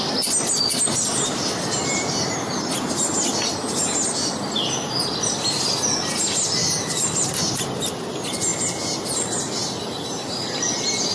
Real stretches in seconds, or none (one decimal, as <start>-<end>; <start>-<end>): 0.0-6.6; 7.3-9.6; 10.2-11.1